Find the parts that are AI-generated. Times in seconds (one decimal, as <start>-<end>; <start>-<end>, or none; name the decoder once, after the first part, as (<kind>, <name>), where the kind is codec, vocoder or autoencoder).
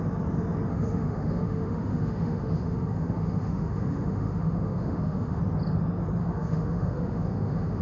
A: 0.7-5.4 (autoencoder, DAC-VAE); 6.2-7.8